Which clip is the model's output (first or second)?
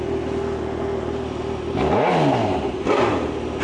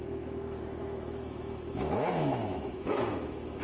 second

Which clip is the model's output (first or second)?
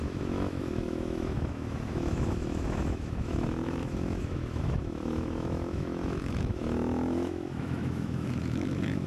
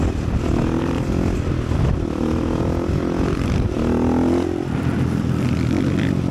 first